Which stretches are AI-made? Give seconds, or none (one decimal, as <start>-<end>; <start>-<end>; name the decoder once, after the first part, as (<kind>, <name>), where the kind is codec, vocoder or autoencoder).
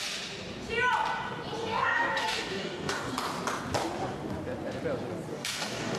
1.6-3.1 (codec, DAC); 5.3-6.0